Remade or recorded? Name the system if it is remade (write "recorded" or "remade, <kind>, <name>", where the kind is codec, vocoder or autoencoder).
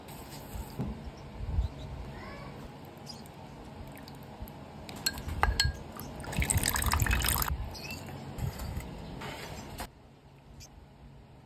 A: recorded